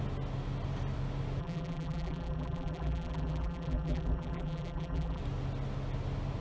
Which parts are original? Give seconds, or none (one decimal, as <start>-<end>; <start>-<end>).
0.0-1.4; 5.2-6.4